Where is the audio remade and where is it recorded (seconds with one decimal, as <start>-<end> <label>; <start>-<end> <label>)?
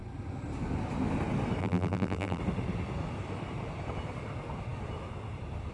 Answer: 0.0-1.6 recorded; 1.6-2.4 remade; 2.4-5.7 recorded